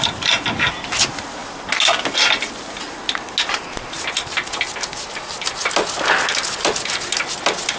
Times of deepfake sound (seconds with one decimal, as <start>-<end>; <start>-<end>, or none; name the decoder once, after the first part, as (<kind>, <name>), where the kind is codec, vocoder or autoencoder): none